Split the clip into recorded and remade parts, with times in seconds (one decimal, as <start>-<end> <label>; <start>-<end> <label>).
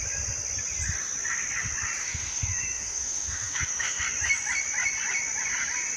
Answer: 0.0-2.0 recorded; 2.0-4.0 remade; 4.0-6.0 recorded